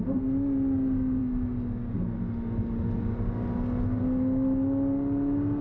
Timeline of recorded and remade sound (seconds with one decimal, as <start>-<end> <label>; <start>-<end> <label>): 0.0-5.6 recorded